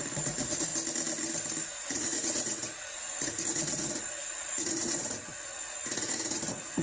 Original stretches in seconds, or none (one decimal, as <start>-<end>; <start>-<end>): 0.7-1.8